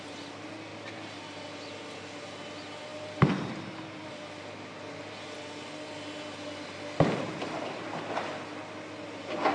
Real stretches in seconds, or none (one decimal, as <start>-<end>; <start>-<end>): 0.0-9.5